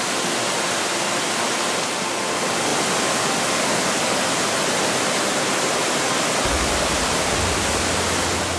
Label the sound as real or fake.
real